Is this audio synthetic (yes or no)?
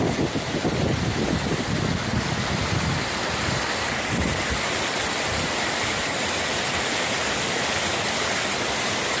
no